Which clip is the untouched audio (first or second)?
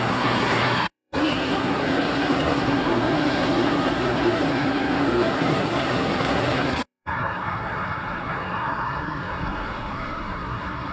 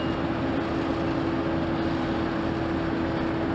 second